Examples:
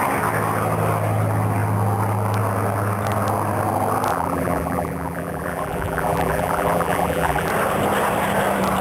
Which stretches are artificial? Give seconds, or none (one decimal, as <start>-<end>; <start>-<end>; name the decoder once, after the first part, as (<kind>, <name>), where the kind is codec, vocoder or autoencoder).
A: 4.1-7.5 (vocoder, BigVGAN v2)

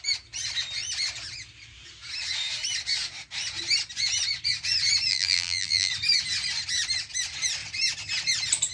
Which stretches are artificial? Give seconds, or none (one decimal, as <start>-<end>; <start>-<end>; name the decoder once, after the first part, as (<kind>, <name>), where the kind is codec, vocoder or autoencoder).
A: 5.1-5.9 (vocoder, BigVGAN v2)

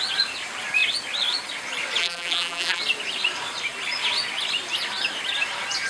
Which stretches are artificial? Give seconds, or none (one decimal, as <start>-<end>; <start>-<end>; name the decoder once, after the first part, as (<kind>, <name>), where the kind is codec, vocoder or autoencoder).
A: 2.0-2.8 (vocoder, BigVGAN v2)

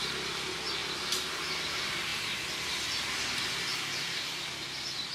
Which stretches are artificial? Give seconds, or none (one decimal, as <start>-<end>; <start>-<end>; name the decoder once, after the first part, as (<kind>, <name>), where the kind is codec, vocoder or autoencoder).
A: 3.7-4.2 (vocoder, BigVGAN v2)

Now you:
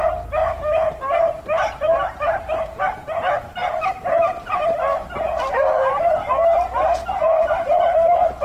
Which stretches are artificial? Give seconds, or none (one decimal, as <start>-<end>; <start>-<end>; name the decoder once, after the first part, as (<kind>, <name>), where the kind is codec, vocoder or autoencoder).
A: 0.4-2.8 (vocoder, BigVGAN v2)

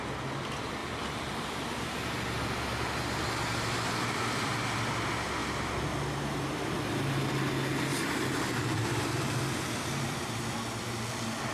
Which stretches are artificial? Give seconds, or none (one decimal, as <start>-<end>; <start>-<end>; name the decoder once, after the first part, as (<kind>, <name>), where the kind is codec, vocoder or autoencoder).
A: 0.8-2.0 (vocoder, BigVGAN v2); 7.9-10.4